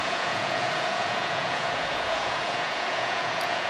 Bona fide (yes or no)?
no